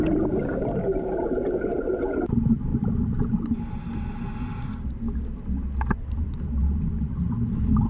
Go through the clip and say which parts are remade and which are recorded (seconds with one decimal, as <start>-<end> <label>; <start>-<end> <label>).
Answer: 0.0-7.9 recorded